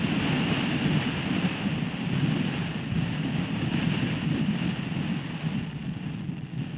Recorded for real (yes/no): yes